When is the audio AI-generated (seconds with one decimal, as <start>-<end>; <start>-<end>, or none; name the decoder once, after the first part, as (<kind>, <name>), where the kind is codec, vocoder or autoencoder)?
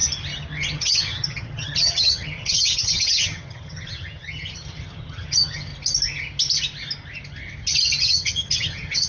0.5-5.7 (vocoder, HiFi-GAN); 8.0-9.1